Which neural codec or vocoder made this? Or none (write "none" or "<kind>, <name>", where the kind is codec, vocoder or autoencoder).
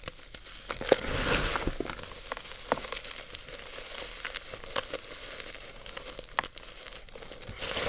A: none